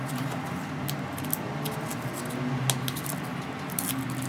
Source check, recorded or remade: recorded